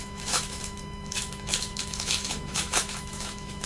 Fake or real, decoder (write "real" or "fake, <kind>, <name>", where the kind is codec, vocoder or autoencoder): fake, autoencoder, DAC-VAE